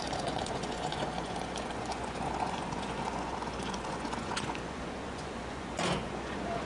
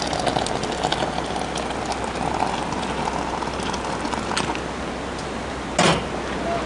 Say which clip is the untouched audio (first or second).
second